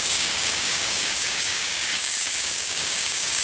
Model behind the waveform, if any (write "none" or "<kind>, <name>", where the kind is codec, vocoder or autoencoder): codec, DAC